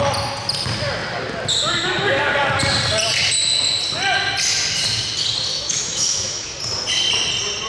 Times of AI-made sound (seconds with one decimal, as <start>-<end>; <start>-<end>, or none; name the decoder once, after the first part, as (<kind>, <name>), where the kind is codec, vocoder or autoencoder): 5.5-6.5 (autoencoder, DAC-VAE)